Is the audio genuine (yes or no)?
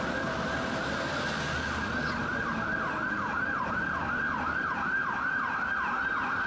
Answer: no